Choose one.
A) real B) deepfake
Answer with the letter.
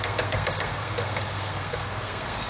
B